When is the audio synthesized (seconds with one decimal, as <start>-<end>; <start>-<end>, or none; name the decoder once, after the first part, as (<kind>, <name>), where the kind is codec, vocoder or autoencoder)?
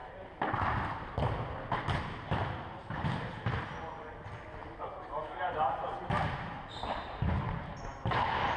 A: none